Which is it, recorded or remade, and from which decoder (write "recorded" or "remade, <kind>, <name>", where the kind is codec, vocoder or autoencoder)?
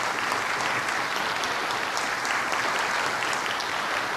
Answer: recorded